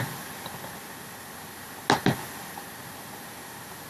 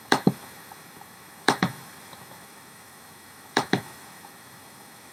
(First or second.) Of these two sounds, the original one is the first